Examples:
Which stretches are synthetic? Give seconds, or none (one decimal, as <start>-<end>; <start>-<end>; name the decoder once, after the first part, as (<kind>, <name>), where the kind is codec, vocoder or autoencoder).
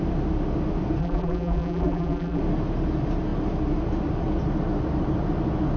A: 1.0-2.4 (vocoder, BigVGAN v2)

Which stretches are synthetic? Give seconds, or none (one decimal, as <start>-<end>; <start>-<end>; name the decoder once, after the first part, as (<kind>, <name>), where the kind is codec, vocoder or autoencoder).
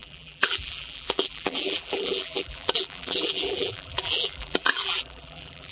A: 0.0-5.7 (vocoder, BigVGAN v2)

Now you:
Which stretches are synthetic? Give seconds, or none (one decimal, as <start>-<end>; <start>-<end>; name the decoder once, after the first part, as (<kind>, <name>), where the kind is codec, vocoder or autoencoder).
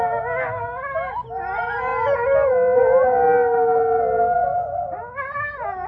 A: none